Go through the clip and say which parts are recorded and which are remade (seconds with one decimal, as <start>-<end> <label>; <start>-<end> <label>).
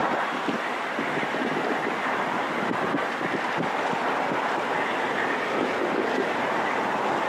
0.0-7.3 recorded